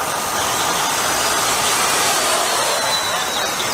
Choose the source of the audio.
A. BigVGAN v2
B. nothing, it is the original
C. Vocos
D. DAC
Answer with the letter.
B